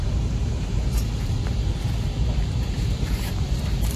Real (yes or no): no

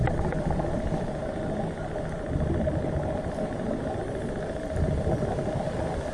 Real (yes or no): yes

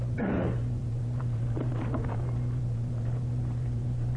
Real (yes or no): no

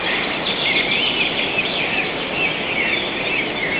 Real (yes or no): yes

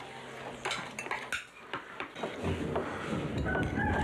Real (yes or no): yes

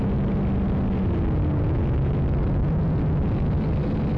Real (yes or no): yes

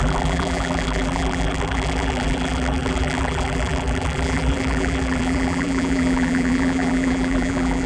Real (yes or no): no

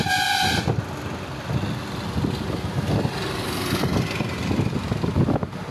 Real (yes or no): yes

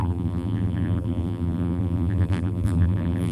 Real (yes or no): no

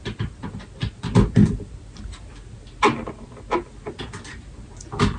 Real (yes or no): yes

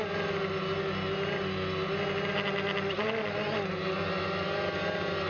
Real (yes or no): yes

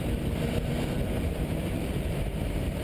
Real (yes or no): no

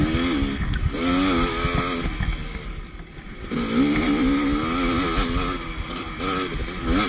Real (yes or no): yes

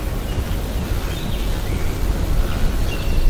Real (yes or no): yes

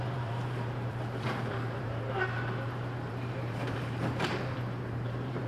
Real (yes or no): no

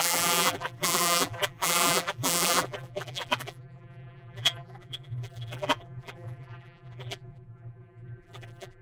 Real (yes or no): no